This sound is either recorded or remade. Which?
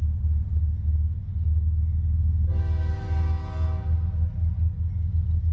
recorded